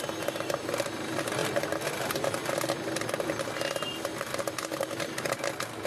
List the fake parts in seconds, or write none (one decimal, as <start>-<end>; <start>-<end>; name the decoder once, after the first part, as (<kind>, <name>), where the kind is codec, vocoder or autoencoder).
4.1-5.5 (vocoder, BigVGAN v2)